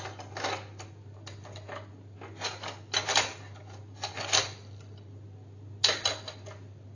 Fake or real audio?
real